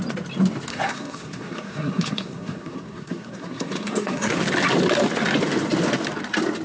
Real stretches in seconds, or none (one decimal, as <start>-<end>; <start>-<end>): 0.0-0.7; 4.3-6.6